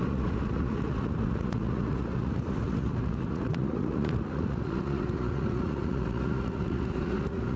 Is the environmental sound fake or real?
fake